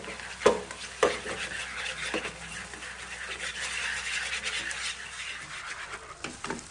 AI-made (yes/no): no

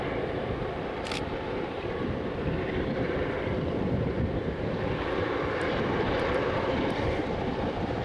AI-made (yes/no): yes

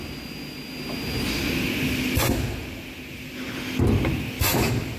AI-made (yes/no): no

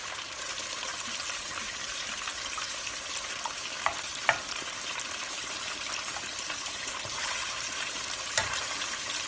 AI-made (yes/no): yes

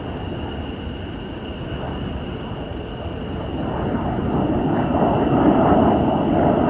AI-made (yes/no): yes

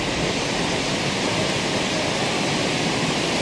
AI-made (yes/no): no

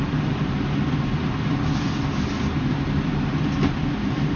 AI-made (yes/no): no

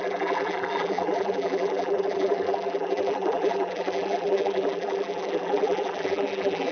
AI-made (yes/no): yes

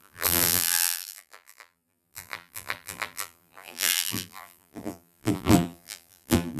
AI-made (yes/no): yes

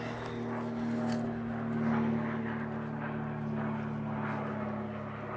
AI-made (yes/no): no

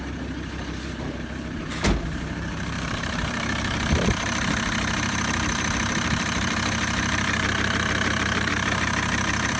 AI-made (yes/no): yes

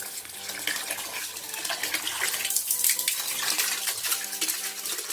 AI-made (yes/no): yes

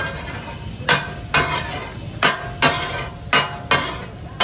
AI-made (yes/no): no